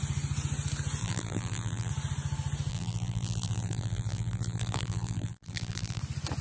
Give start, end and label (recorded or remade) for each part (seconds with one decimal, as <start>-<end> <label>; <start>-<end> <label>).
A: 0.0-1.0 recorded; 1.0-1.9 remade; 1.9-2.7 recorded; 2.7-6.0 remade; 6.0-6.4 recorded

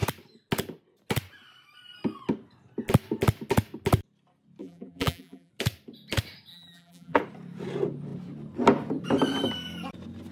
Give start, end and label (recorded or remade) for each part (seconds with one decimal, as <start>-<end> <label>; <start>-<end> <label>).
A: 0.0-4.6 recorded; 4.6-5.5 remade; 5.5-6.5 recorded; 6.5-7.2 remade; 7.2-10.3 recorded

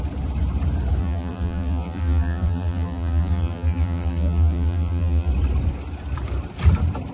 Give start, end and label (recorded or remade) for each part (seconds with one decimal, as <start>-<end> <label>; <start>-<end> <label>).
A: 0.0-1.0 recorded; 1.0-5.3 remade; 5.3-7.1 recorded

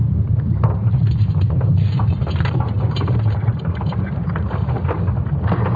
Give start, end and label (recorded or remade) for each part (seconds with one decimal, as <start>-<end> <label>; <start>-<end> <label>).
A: 0.0-0.8 recorded; 0.8-4.3 remade; 4.3-5.8 recorded

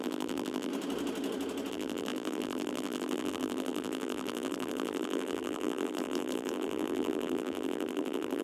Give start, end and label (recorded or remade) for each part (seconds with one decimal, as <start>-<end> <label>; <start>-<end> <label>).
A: 0.0-0.7 remade; 0.7-1.7 recorded; 1.7-8.4 remade

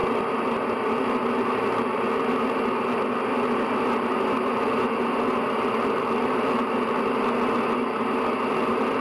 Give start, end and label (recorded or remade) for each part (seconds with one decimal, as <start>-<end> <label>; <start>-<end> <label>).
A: 0.0-9.0 recorded